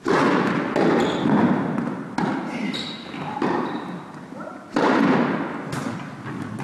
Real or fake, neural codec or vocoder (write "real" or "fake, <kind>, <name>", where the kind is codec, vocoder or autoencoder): real